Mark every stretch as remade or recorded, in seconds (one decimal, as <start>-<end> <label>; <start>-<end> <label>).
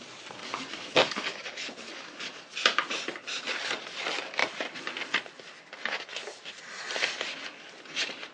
0.0-0.4 recorded; 0.4-2.4 remade; 2.4-8.3 recorded